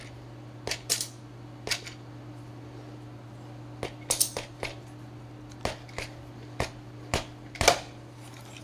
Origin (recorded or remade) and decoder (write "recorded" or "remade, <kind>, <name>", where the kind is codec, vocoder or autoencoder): recorded